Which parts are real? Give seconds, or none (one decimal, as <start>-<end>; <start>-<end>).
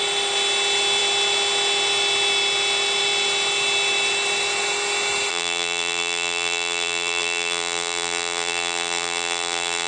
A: 0.0-5.3